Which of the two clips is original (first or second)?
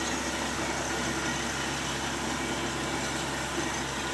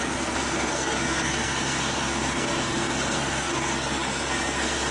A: first